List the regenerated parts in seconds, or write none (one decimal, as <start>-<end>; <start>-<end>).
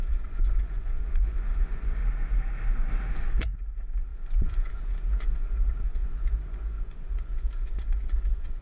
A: 0.0-2.0; 3.1-8.6